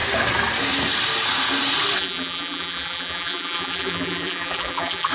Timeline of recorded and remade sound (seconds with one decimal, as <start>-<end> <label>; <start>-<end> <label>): 0.0-2.0 recorded; 2.0-5.1 remade